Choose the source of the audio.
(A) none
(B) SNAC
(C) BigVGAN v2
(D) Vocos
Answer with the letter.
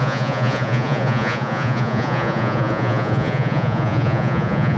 D